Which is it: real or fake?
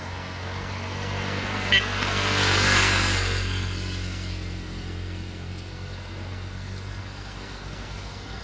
fake